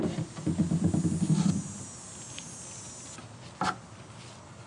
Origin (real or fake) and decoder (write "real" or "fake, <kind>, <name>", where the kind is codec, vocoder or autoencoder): real